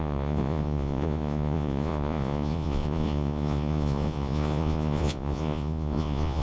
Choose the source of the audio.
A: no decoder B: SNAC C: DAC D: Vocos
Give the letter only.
D